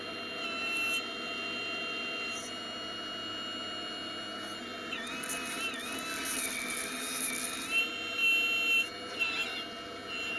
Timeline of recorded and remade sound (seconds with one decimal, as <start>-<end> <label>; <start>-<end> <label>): 0.0-10.4 recorded